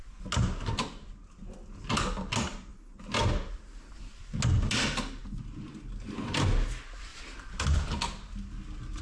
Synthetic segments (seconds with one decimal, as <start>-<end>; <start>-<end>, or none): 5.2-5.7; 7.1-7.9